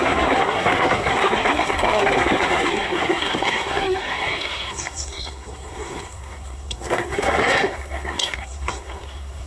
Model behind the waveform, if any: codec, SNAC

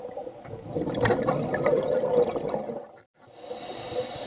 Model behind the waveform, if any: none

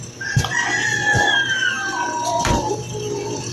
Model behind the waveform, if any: none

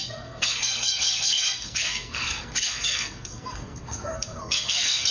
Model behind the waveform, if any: codec, SNAC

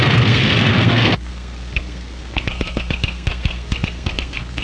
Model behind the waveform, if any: codec, SNAC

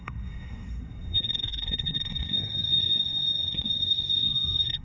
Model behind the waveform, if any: codec, SNAC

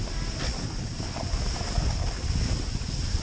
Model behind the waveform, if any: none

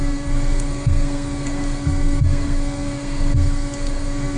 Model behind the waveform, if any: codec, SNAC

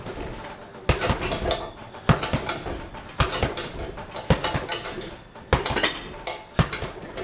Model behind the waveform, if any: none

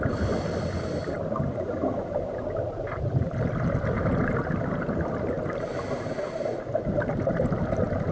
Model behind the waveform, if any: none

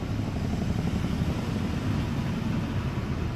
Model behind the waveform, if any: none